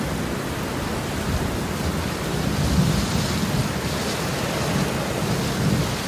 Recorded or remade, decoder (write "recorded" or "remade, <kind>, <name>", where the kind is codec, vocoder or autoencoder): recorded